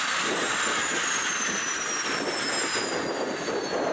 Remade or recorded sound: recorded